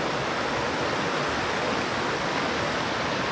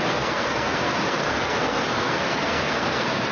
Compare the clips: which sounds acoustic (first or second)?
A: first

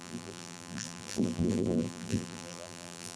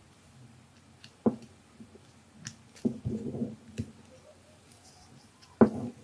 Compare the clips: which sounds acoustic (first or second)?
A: second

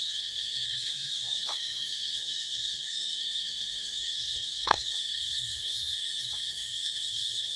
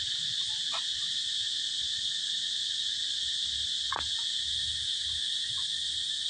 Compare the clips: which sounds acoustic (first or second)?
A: second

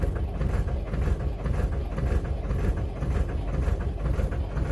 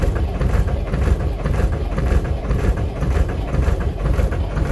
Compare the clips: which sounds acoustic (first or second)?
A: first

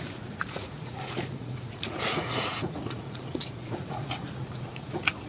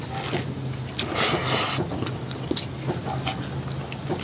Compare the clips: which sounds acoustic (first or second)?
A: second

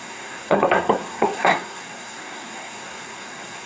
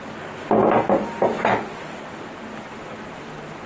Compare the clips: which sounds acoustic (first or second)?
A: second